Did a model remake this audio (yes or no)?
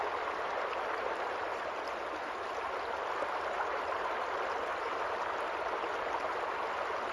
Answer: no